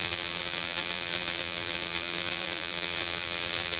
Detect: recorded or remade remade